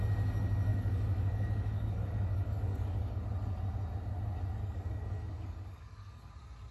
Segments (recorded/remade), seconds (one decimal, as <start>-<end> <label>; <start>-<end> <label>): 0.0-0.7 recorded; 0.7-3.2 remade; 3.2-4.6 recorded; 4.6-6.3 remade; 6.3-6.7 recorded